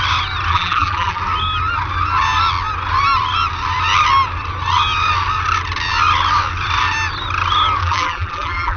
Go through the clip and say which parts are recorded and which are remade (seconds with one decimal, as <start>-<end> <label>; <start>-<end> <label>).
0.0-0.5 recorded; 0.5-1.2 remade; 1.2-7.8 recorded; 7.8-8.8 remade